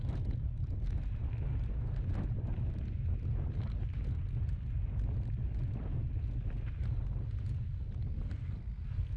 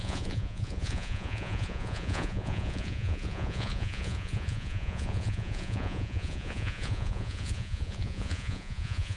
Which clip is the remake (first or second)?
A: second